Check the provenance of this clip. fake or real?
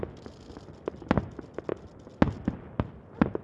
real